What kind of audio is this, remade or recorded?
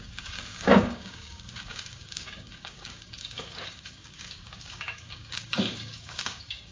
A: remade